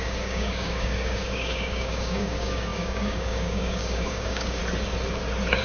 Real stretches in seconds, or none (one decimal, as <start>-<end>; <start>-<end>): 4.6-5.6